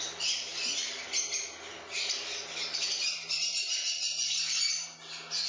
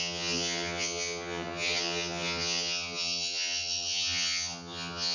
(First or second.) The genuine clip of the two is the first